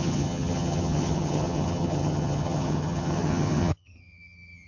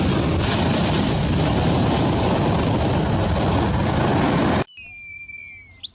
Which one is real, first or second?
second